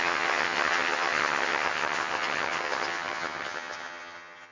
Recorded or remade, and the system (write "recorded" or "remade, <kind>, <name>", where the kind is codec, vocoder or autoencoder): remade, vocoder, HiFi-GAN